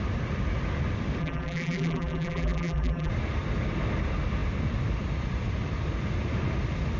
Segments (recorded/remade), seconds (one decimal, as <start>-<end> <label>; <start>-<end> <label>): 0.0-1.2 recorded; 1.2-3.1 remade; 3.1-7.0 recorded